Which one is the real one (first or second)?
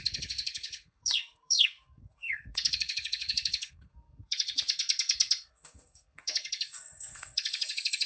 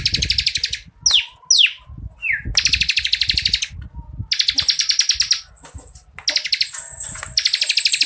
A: second